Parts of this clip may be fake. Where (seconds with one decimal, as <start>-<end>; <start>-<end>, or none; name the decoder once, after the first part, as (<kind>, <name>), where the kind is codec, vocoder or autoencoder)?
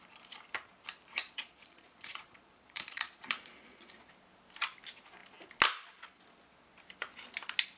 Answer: 1.2-4.1 (vocoder, Vocos)